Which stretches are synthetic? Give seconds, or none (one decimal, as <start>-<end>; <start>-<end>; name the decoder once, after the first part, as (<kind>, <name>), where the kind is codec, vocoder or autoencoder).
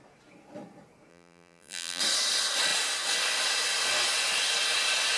1.1-2.0 (vocoder, BigVGAN v2)